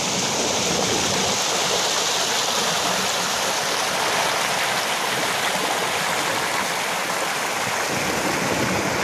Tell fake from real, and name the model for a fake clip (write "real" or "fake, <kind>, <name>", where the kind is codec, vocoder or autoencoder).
real